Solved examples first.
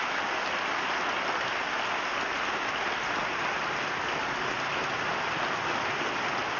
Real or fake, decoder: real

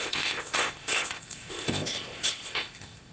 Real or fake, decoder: fake, codec, ZipCodec